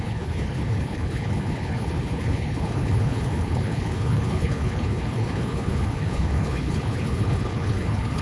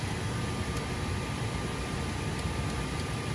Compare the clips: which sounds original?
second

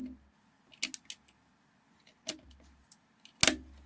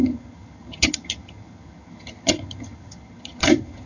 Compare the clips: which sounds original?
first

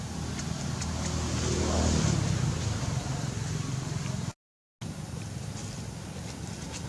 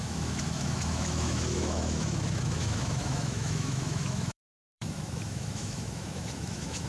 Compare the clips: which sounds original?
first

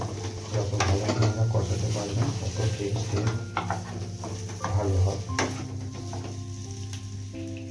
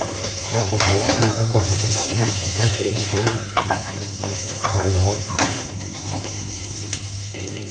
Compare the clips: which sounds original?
first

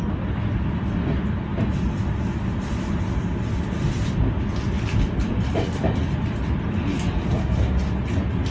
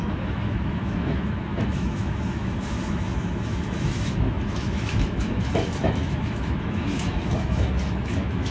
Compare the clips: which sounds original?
first